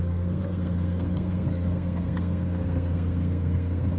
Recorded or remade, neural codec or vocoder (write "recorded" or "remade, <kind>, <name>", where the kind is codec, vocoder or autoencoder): remade, codec, SNAC